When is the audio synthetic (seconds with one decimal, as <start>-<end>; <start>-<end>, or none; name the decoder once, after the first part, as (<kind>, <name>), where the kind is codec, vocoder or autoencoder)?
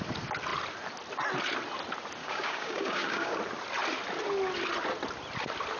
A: 2.2-3.4 (codec, DAC)